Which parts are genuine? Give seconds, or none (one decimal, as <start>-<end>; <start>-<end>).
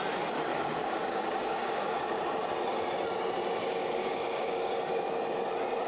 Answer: 0.0-0.5; 2.2-3.8; 5.2-5.9